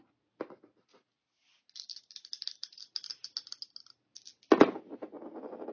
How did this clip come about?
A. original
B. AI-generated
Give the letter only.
A